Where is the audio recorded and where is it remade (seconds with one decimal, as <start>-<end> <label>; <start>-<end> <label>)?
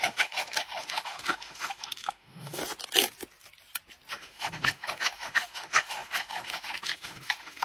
0.0-2.6 remade; 2.6-4.1 recorded; 4.1-7.6 remade